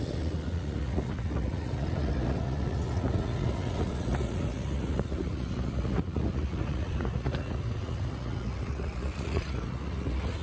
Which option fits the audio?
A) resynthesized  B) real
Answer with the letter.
A